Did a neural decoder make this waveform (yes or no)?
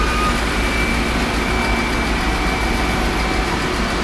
no